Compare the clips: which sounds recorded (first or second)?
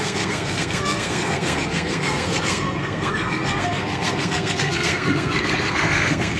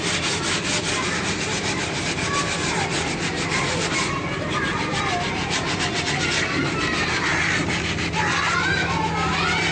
second